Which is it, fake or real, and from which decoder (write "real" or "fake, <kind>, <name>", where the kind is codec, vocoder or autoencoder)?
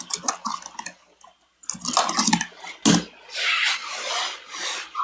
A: real